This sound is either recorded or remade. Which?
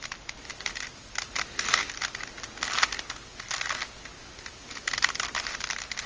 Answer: recorded